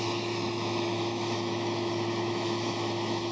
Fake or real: fake